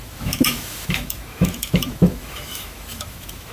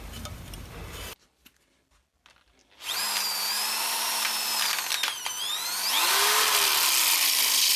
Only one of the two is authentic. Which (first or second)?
second